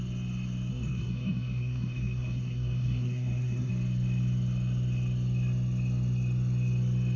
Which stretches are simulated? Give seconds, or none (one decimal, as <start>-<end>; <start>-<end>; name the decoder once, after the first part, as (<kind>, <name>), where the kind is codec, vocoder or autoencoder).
0.7-3.7 (codec, SNAC)